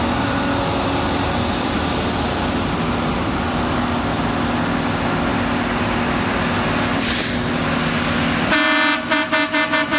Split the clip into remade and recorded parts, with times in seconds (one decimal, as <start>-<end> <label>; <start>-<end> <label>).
0.0-10.0 recorded